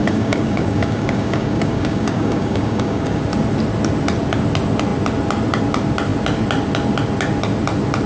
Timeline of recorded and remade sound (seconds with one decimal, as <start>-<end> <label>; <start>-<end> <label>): 0.0-3.2 remade; 3.2-8.1 recorded